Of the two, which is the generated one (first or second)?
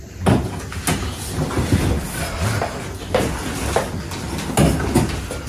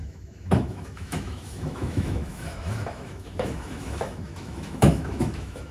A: second